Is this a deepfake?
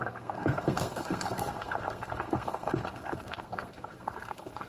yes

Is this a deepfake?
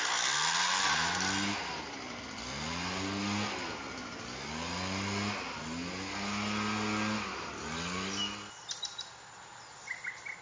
no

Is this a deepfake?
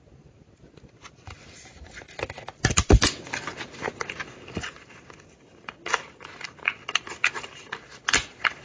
no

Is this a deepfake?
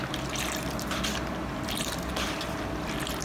no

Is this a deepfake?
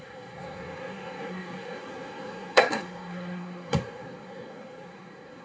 yes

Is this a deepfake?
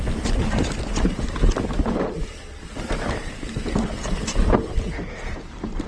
no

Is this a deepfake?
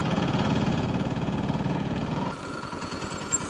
yes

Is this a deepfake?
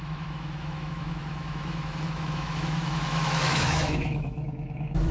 yes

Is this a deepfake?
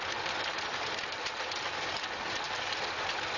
yes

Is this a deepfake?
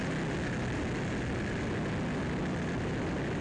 no